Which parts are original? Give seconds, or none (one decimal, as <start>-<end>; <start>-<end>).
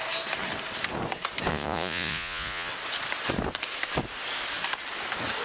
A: 0.0-1.5; 2.7-5.4